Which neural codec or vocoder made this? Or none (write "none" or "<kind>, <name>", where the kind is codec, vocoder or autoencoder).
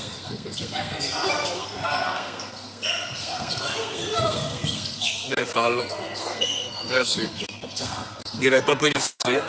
codec, SNAC